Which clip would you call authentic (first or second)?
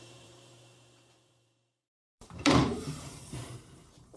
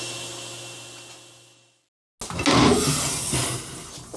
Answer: second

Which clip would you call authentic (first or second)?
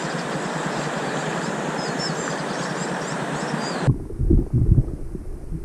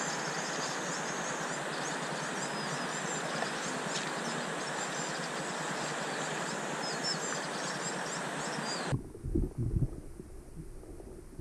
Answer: second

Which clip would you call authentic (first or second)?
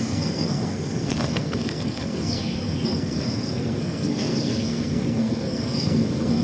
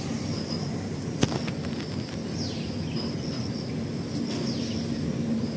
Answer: second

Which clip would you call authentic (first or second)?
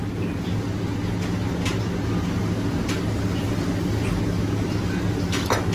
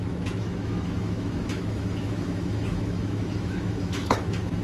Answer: first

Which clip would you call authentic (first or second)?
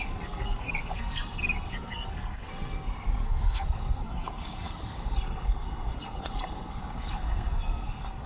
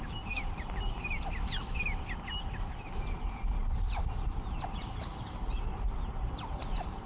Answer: second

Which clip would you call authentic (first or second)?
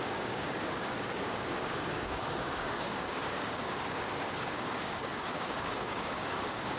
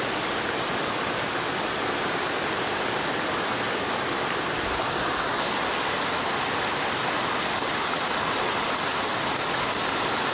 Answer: second